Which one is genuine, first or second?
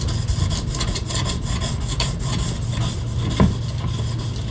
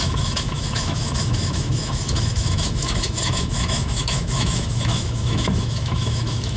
first